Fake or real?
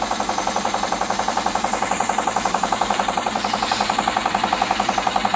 fake